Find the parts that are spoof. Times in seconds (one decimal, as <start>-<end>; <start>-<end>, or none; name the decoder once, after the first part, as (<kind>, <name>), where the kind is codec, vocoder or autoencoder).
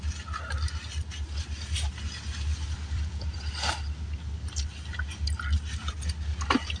2.5-3.4 (vocoder, BigVGAN v2)